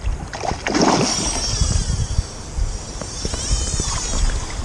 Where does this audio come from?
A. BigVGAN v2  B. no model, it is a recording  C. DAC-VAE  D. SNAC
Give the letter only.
B